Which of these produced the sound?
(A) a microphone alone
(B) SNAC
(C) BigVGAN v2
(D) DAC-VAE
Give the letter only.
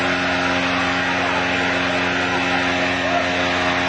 A